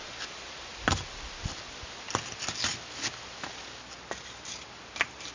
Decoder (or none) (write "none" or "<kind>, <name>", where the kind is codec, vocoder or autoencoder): none